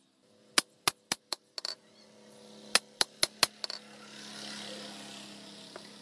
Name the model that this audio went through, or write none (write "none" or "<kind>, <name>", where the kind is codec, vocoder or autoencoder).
none